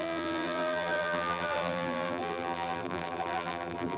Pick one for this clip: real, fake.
fake